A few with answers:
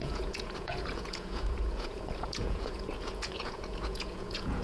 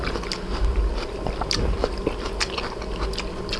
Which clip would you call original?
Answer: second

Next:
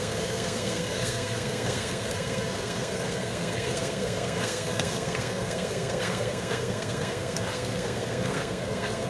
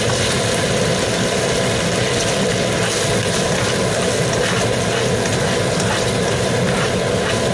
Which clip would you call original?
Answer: second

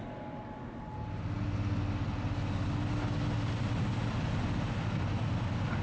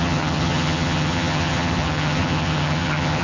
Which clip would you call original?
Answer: first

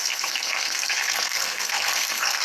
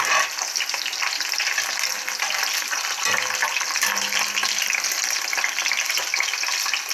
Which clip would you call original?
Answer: second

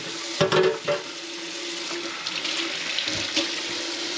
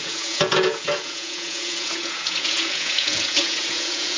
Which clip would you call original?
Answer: first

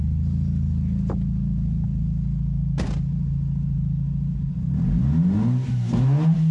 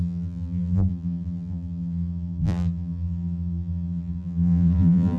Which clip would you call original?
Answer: first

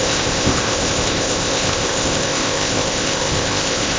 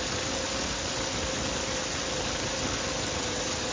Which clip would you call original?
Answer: second